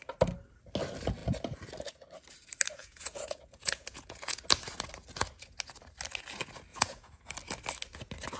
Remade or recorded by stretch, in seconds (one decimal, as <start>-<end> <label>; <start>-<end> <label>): 0.0-2.8 recorded; 2.8-4.4 remade; 4.4-6.7 recorded; 6.7-7.3 remade; 7.3-8.4 recorded